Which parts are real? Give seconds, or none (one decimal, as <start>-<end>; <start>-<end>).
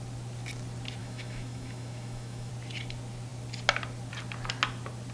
0.0-1.0; 2.5-5.1